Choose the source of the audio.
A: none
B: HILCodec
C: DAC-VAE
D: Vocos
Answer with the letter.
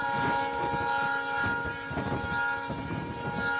A